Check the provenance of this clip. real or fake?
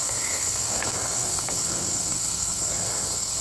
fake